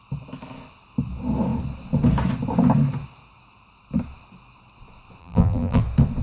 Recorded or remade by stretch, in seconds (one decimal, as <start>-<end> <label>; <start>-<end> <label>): 0.0-5.2 recorded; 5.2-5.8 remade; 5.8-6.2 recorded